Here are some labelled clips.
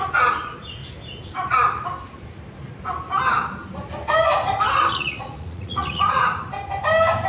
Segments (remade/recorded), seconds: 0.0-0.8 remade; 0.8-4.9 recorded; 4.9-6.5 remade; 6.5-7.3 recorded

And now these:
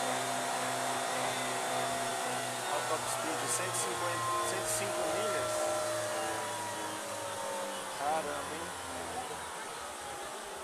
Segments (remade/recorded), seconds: 0.0-10.6 recorded

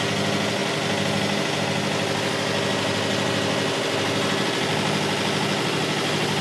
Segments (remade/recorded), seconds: 0.0-6.4 recorded

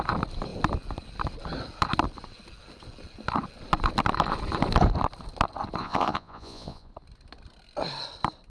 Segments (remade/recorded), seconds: 0.0-5.8 recorded; 5.8-6.9 remade; 6.9-8.5 recorded